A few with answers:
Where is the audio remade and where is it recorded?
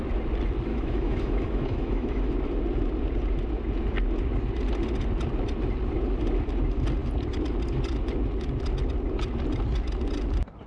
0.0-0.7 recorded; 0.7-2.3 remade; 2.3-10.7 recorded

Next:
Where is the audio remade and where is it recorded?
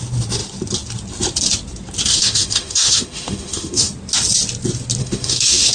0.0-2.1 recorded; 2.1-3.9 remade; 3.9-5.0 recorded; 5.0-5.7 remade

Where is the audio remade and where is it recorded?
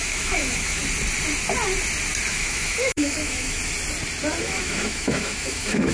0.0-0.8 remade; 0.8-2.3 recorded; 2.3-3.6 remade; 3.6-4.4 recorded; 4.4-5.9 remade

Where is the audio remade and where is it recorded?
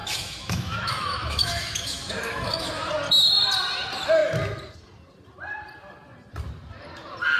0.0-2.9 remade; 2.9-7.4 recorded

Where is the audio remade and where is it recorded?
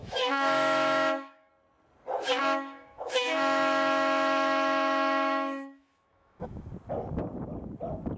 0.0-1.5 remade; 1.5-2.4 recorded; 2.4-6.7 remade; 6.7-8.2 recorded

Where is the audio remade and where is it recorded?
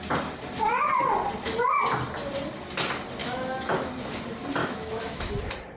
0.0-3.2 recorded; 3.2-3.9 remade; 3.9-4.6 recorded; 4.6-5.3 remade; 5.3-5.8 recorded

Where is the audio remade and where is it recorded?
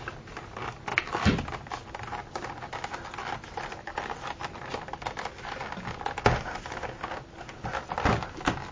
0.0-8.7 recorded